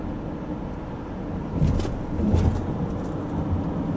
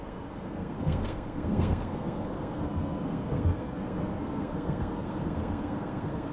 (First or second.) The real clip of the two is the first